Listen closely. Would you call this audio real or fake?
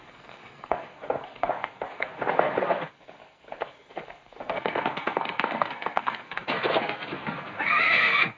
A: fake